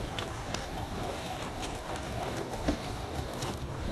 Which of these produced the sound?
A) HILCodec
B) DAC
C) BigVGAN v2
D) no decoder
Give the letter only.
B